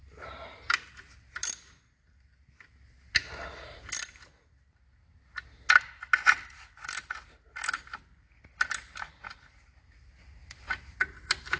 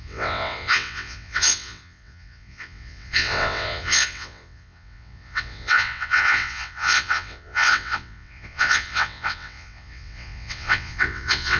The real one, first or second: first